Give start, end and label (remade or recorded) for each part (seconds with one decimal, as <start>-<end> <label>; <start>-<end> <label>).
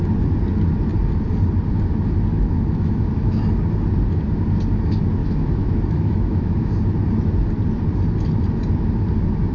0.0-2.3 recorded; 2.3-3.4 remade; 3.4-5.2 recorded; 5.2-6.7 remade; 6.7-9.5 recorded